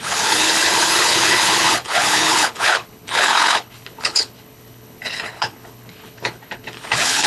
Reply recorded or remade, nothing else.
remade